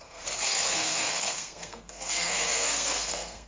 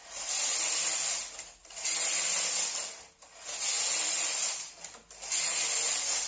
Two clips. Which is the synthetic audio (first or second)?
first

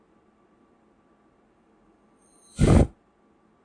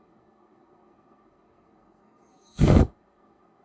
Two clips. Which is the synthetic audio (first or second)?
second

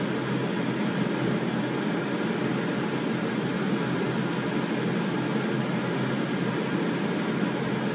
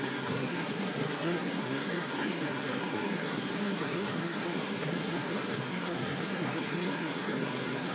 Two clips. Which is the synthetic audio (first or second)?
second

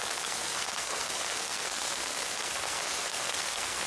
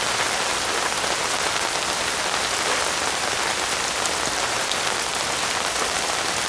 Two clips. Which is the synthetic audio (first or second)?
first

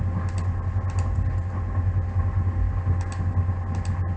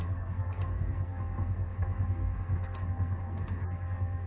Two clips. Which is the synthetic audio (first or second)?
second